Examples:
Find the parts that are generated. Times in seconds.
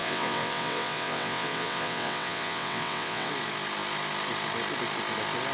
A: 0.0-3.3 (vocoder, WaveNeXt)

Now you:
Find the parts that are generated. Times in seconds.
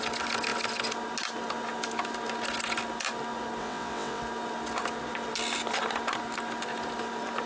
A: 3.6-4.2 (vocoder, WaveNeXt)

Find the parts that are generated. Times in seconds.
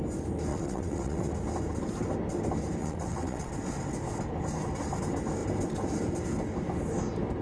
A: 0.5-1.3 (vocoder, WaveNeXt); 2.8-3.5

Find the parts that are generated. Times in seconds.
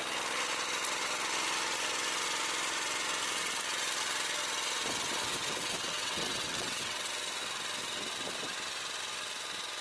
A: 5.3-7.1 (vocoder, WaveNeXt)